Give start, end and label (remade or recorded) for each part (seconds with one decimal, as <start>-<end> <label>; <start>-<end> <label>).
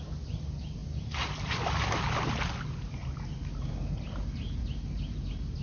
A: 0.0-5.6 recorded